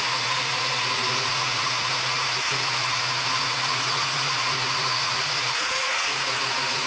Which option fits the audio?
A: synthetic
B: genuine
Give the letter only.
A